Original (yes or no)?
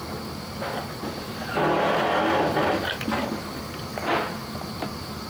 yes